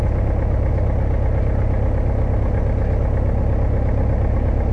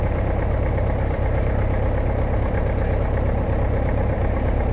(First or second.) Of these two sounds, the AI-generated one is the second